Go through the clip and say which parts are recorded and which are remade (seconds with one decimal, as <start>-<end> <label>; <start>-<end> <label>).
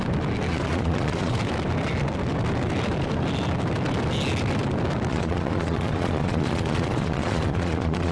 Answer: 0.0-0.5 recorded; 0.5-1.3 remade; 1.3-5.1 recorded; 5.1-8.1 remade